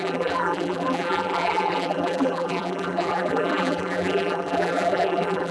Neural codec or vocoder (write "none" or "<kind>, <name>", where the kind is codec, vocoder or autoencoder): vocoder, BigVGAN v2